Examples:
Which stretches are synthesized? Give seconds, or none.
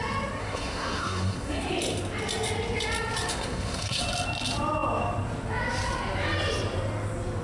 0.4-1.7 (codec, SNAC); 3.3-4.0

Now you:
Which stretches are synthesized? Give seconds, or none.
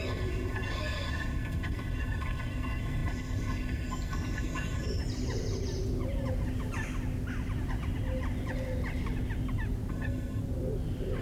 0.0-5.0 (codec, SNAC); 9.9-10.4